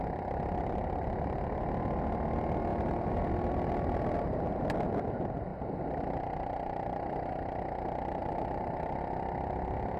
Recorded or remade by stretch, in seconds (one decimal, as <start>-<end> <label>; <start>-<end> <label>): 0.0-2.7 recorded; 2.7-3.3 remade; 3.3-8.2 recorded; 8.2-9.0 remade; 9.0-10.0 recorded